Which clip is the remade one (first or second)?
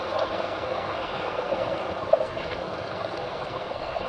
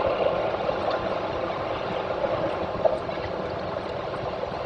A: first